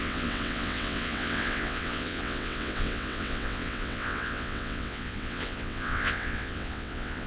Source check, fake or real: fake